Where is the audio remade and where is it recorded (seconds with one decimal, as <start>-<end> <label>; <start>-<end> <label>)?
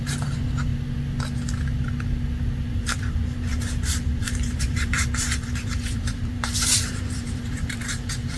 0.0-0.7 remade; 0.7-2.7 recorded; 2.7-8.4 remade